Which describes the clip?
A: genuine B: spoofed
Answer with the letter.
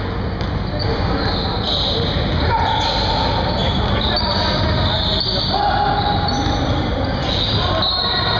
A